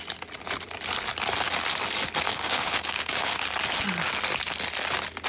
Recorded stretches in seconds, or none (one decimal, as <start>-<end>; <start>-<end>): 0.0-2.3; 3.4-5.3